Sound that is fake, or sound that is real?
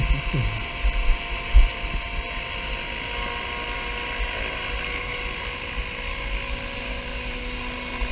real